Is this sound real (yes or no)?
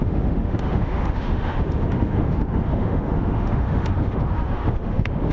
no